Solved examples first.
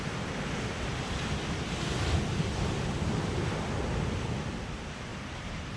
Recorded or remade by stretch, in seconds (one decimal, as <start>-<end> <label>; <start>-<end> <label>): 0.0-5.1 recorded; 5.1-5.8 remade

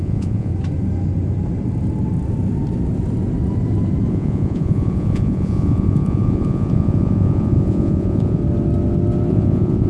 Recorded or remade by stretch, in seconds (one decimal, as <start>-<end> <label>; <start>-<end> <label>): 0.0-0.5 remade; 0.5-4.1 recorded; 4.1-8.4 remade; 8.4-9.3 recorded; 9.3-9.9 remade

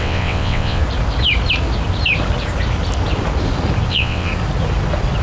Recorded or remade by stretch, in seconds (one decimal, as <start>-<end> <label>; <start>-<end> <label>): 0.0-0.8 remade; 0.8-3.9 recorded; 3.9-4.3 remade; 4.3-5.2 recorded

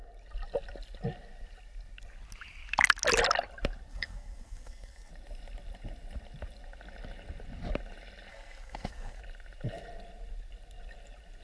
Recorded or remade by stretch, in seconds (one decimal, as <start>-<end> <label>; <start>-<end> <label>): 0.0-3.9 recorded; 3.9-5.1 remade; 5.1-8.3 recorded; 8.3-9.2 remade; 9.2-11.4 recorded